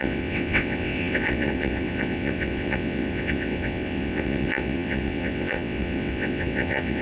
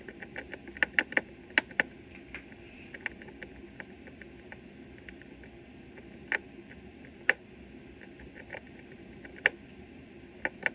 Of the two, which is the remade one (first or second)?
first